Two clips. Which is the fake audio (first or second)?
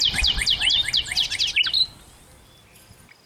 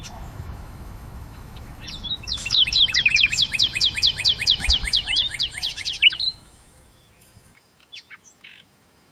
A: second